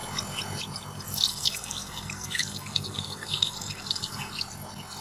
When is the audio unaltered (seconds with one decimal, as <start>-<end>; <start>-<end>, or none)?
0.0-1.3; 4.3-5.0